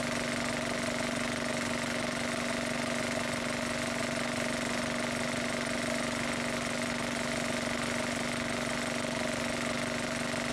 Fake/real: real